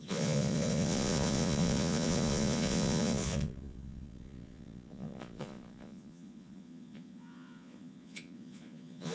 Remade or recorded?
remade